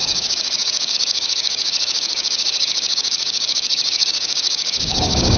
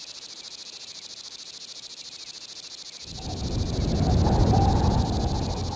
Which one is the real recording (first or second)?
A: second